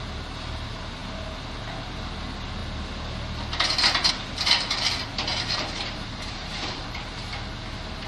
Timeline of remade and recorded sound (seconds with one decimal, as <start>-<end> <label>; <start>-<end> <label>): 0.0-5.3 recorded; 5.3-7.3 remade; 7.3-8.1 recorded